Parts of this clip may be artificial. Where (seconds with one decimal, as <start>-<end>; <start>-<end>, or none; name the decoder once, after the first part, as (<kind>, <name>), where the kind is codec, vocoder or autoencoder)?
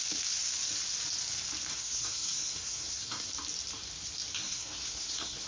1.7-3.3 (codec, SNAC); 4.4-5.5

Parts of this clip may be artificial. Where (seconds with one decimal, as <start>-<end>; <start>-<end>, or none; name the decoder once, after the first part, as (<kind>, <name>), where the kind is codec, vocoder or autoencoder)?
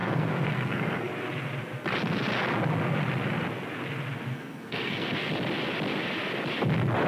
0.0-1.1 (codec, SNAC); 4.3-5.3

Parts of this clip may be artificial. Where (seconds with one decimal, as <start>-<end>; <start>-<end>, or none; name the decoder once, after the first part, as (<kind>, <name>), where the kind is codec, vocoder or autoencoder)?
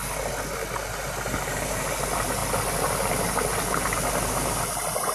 none